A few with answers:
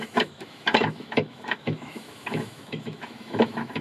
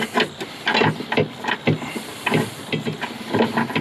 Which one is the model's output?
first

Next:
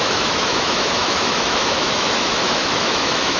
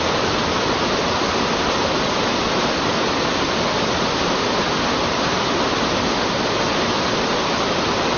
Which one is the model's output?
first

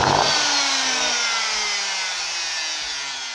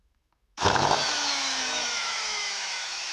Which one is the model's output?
second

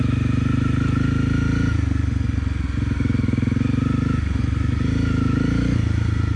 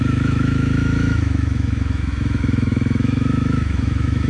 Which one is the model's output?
second